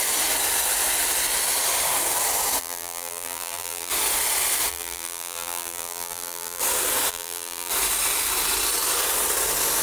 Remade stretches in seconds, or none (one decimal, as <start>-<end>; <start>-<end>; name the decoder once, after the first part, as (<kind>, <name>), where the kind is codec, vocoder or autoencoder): 2.6-3.9 (vocoder, BigVGAN v2); 4.7-6.6; 7.1-7.7